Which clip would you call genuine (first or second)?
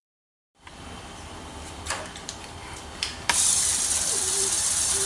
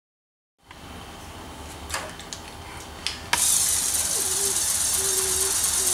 second